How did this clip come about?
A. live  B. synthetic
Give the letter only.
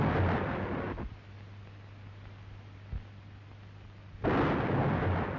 A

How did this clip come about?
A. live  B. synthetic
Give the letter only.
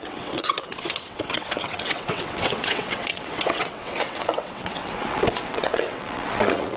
B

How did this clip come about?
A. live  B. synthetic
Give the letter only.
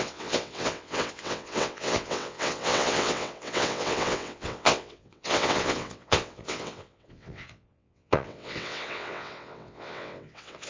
B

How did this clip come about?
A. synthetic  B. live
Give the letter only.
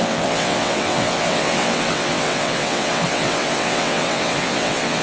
A